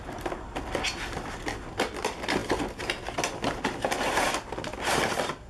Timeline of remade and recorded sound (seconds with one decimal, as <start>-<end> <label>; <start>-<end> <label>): 0.0-5.5 recorded